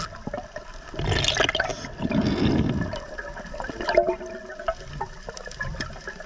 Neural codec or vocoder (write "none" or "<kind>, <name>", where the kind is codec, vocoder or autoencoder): none